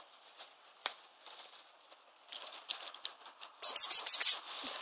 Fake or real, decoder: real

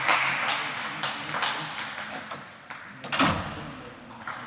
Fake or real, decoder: real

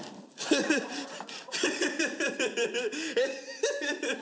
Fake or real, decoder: fake, vocoder, BigVGAN v2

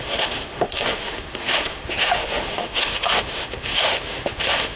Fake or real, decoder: fake, autoencoder, DAC-VAE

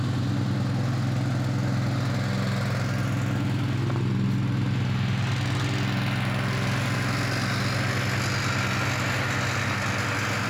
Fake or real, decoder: real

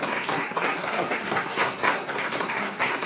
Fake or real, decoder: fake, codec, SNAC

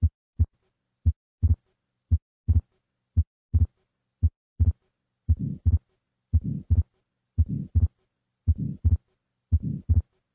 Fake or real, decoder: real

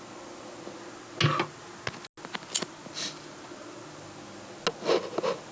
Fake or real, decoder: real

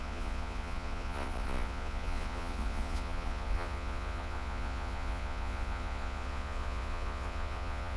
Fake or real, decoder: fake, vocoder, Vocos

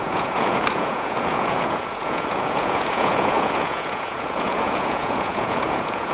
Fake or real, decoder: fake, vocoder, Vocos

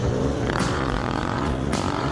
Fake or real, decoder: fake, vocoder, Vocos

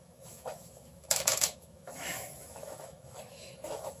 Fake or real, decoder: fake, autoencoder, DAC-VAE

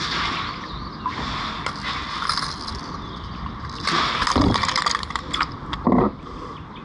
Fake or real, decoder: real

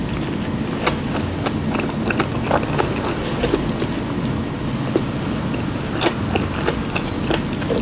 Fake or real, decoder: real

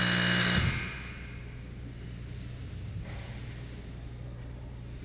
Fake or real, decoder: real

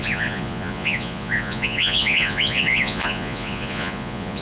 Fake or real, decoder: fake, vocoder, Vocos